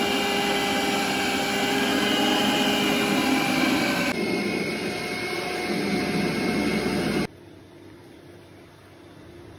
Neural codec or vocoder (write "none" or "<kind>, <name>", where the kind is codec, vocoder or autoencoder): none